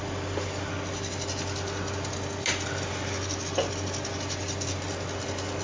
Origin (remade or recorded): recorded